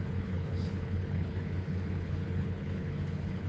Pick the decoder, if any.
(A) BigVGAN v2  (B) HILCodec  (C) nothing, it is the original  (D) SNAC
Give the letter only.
B